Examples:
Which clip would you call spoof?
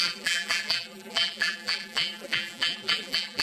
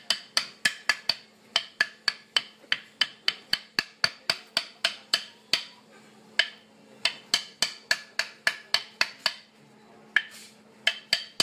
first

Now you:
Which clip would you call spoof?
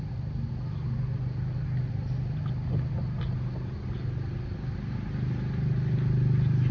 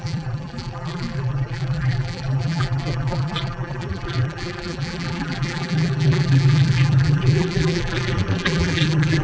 second